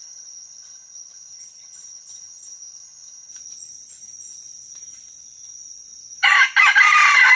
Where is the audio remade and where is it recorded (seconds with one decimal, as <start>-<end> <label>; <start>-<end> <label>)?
0.0-3.3 remade; 3.3-7.4 recorded